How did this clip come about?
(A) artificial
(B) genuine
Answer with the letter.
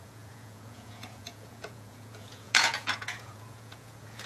A